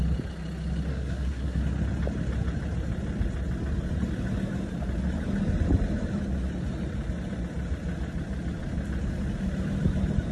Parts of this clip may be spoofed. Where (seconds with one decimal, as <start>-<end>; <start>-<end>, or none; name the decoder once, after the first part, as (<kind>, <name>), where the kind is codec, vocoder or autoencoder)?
0.9-1.6 (codec, SNAC)